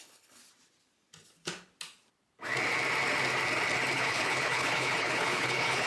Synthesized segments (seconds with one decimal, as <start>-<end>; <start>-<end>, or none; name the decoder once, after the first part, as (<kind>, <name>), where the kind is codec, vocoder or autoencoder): 0.0-0.4 (codec, HILCodec); 3.9-5.9